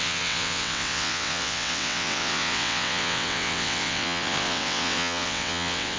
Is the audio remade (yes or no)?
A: yes